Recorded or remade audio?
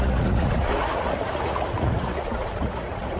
remade